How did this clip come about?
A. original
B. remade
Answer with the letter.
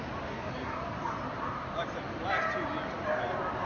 A